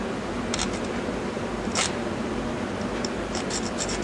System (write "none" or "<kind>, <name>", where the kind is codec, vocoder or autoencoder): none